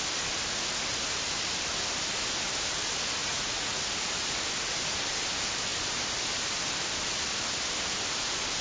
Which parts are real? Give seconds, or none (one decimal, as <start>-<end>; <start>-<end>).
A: 0.0-3.2; 3.8-8.6

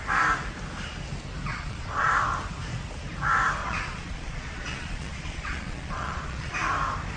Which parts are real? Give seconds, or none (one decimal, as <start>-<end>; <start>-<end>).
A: 0.0-1.5; 2.1-3.6; 6.5-7.2

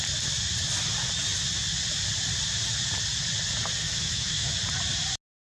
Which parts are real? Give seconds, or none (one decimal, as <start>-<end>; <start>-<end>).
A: 0.0-3.8; 4.5-5.5

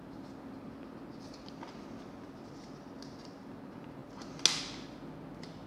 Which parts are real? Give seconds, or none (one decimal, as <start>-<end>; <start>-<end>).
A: 0.0-5.7

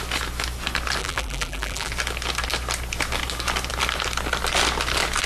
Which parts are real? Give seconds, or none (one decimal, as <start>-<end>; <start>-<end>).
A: 0.0-1.0; 1.9-5.3